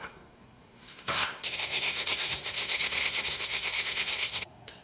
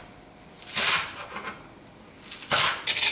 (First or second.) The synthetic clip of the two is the first